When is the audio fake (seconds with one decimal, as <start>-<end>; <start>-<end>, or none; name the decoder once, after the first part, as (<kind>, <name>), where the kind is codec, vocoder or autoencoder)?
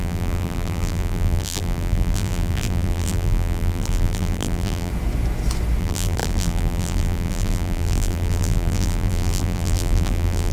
0.0-4.9 (vocoder, BigVGAN v2); 5.8-10.5